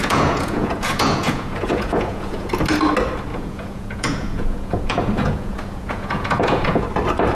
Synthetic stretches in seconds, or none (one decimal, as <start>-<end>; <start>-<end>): 0.0-2.5; 3.3-6.8